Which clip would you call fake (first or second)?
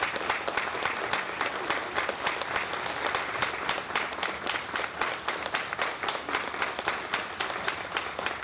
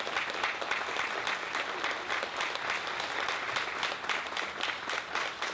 first